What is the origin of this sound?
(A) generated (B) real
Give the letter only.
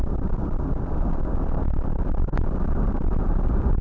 B